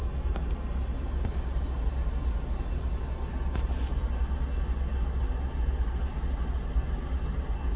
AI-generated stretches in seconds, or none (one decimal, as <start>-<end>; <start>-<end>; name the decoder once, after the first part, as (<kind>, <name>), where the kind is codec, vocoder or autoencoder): none

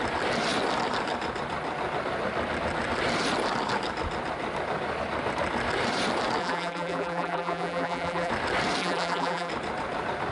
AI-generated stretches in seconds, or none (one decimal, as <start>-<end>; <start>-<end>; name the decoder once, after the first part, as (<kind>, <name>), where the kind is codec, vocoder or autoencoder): 6.4-8.3 (vocoder, BigVGAN v2); 8.8-9.5